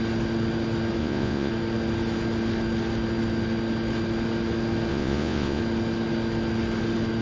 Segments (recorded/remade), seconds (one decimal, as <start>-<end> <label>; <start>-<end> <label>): 0.0-1.0 recorded; 1.0-1.5 remade; 1.5-4.9 recorded; 4.9-5.6 remade; 5.6-7.2 recorded